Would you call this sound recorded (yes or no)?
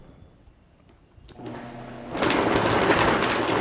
yes